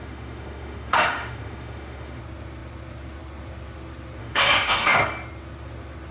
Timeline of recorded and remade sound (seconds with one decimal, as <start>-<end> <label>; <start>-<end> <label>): 0.0-2.2 remade; 2.2-4.2 recorded; 4.2-5.0 remade; 5.0-6.1 recorded